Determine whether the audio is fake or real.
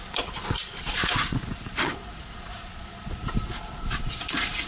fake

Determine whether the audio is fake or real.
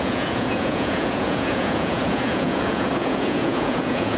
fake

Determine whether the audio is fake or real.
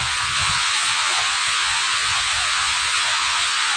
fake